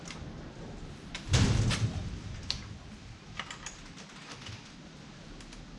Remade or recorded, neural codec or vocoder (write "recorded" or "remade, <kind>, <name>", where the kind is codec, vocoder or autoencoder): recorded